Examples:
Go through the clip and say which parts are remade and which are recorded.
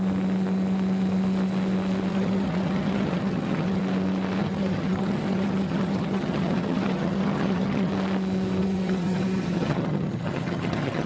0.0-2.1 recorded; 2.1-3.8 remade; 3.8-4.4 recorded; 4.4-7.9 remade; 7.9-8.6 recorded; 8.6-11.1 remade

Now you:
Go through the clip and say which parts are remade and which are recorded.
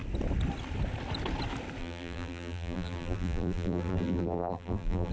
0.0-1.8 recorded; 1.8-5.1 remade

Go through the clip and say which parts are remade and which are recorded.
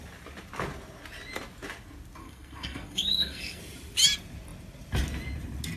0.0-2.2 recorded; 2.2-3.6 remade; 3.6-5.8 recorded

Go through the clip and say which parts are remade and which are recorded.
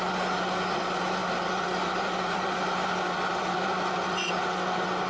0.0-1.2 recorded; 1.2-4.3 remade; 4.3-5.1 recorded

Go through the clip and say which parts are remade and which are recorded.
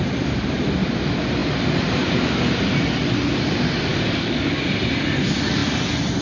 0.0-3.9 recorded; 3.9-4.6 remade; 4.6-6.2 recorded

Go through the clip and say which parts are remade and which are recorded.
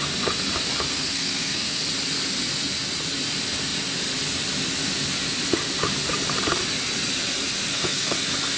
0.0-0.9 recorded; 0.9-1.8 remade; 1.8-7.7 recorded; 7.7-8.2 remade; 8.2-8.6 recorded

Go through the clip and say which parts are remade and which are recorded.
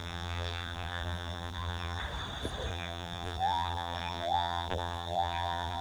0.0-2.0 remade; 2.0-2.7 recorded; 2.7-5.8 remade